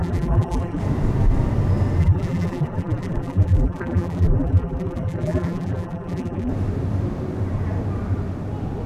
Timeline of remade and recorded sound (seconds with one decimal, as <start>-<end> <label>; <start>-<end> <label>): 0.0-0.8 remade; 0.8-2.0 recorded; 2.0-6.5 remade; 6.5-8.9 recorded